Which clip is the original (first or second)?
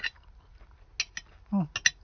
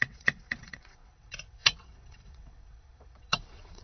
first